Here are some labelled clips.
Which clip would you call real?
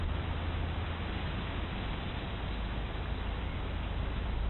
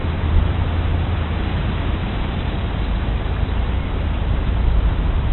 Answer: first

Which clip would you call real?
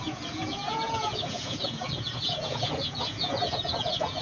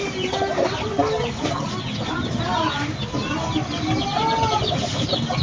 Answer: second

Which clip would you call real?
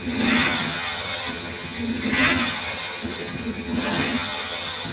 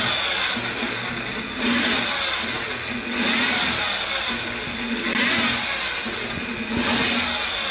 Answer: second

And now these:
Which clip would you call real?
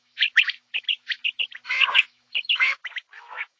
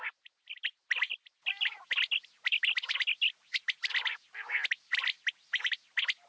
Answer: second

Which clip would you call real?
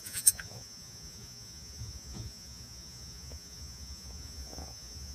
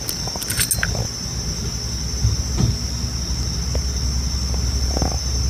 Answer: second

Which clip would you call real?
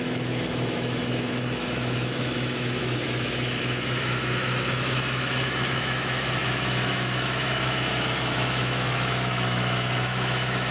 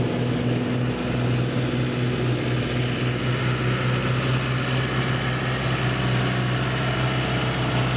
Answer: second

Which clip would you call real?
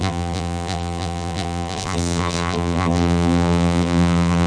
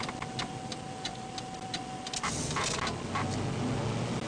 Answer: second